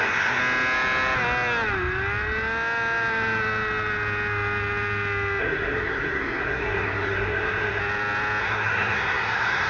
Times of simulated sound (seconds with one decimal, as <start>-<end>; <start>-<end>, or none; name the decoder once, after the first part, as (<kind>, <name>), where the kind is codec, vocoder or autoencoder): 0.0-0.4 (codec, SNAC); 5.4-7.8; 8.4-9.7

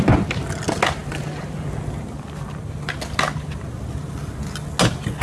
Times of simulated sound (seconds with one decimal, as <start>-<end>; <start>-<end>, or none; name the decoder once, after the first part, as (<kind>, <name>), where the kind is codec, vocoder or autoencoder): none